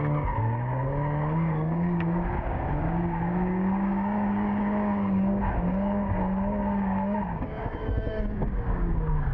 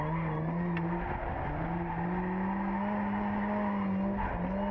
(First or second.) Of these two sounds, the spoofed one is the first